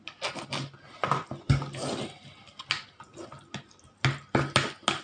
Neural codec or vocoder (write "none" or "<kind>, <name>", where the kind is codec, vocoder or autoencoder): none